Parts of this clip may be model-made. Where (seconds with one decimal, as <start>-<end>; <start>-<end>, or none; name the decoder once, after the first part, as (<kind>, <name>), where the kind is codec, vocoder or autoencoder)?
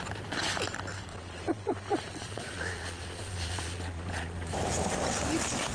1.1-4.5 (vocoder, Vocos)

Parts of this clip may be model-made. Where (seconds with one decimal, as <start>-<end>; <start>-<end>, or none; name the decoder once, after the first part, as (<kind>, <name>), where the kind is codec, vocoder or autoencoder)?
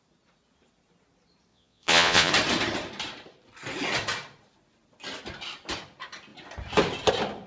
1.5-2.3 (vocoder, Vocos)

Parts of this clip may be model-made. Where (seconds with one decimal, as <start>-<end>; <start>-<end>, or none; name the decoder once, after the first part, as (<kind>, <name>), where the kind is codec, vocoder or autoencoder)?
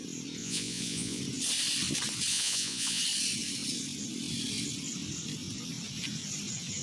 0.4-1.2 (vocoder, Vocos); 2.3-3.0